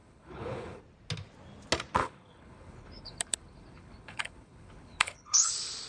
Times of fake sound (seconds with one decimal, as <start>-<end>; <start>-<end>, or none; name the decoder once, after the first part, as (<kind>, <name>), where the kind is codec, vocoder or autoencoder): 0.0-0.8 (codec, HILCodec); 2.0-5.5